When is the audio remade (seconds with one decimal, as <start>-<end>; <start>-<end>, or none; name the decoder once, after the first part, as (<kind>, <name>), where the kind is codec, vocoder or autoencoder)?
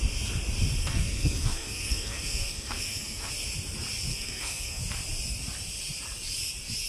0.8-3.3 (codec, SNAC); 4.1-4.8